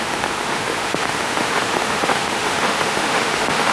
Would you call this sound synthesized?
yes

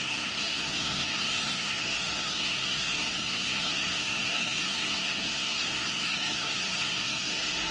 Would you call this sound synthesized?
yes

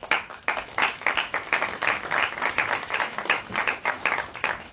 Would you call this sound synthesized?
yes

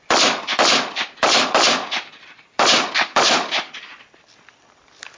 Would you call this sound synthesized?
no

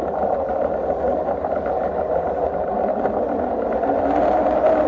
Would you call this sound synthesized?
no